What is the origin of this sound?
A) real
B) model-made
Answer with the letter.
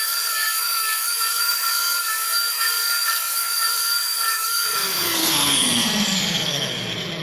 B